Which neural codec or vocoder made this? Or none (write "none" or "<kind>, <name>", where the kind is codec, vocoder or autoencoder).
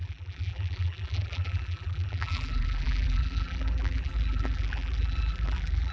vocoder, BigVGAN v2